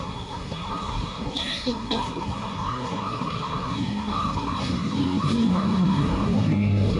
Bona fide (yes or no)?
no